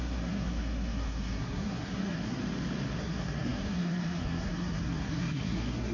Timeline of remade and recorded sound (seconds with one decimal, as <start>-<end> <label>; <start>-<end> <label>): 0.0-2.4 remade; 2.4-3.0 recorded; 3.0-5.9 remade